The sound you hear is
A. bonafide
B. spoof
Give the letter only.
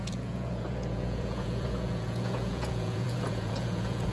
B